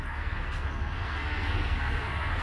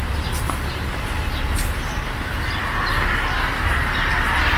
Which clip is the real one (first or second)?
second